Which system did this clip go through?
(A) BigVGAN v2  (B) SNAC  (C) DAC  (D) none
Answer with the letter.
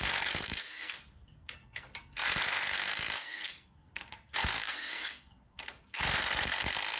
B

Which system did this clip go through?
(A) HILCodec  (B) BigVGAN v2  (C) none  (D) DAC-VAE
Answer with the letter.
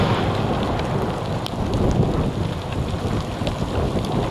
C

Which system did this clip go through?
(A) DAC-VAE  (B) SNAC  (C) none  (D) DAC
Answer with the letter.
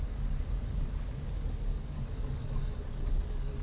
D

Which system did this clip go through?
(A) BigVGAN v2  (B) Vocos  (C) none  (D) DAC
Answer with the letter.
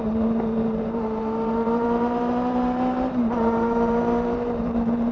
A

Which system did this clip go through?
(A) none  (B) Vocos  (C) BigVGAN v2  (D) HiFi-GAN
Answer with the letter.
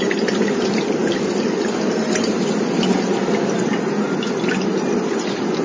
A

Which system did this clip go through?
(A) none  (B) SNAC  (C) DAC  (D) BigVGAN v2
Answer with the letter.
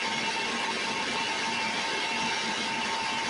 A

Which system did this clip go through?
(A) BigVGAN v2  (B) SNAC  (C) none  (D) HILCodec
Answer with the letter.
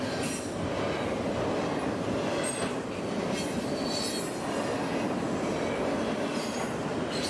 C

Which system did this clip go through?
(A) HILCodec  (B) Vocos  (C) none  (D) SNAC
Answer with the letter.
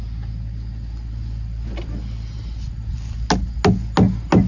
C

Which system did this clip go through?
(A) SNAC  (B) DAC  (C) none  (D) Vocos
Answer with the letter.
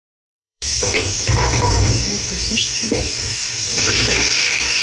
B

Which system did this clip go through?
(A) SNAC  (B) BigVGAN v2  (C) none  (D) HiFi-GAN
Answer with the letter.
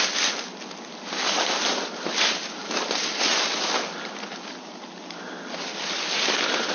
C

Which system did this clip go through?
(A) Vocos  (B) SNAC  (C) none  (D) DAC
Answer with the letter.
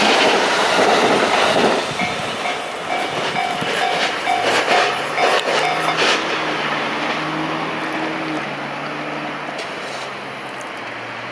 C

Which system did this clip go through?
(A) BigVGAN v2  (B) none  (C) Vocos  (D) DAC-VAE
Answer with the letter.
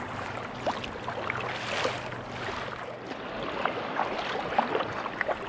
B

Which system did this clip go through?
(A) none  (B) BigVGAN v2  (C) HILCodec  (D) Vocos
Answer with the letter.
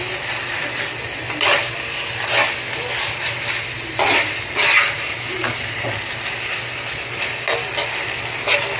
A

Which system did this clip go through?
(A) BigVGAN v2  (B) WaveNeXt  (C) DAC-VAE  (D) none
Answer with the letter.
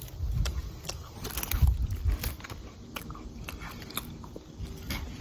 D